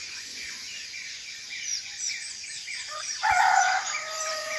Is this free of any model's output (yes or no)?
no